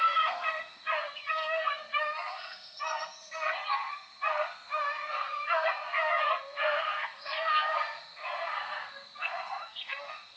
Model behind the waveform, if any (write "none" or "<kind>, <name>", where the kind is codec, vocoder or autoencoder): codec, SNAC